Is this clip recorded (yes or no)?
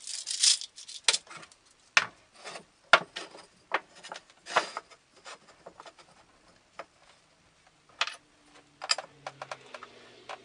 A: yes